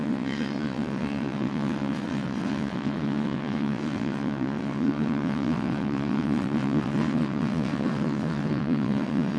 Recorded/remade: remade